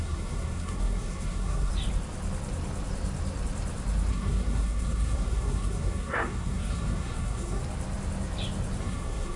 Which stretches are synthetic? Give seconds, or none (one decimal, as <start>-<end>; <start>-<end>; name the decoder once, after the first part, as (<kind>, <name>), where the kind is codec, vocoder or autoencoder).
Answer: 0.0-1.7 (codec, SNAC); 4.1-7.6; 8.8-9.4